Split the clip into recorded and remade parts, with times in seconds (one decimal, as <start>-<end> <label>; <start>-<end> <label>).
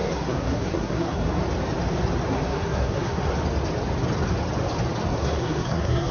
0.0-1.4 remade; 1.4-2.3 recorded; 2.3-3.3 remade; 3.3-5.1 recorded; 5.1-6.1 remade